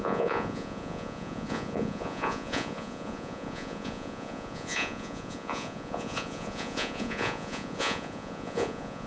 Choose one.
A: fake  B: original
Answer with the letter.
A